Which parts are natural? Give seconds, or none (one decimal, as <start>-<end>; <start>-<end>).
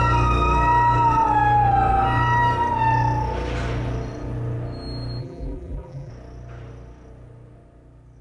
0.0-5.2; 6.1-8.2